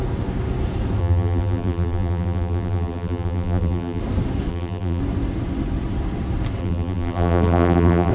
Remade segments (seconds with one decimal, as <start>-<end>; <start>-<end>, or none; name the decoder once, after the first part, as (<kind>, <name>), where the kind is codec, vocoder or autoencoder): 1.0-4.0 (vocoder, BigVGAN v2); 4.5-5.0; 6.6-8.1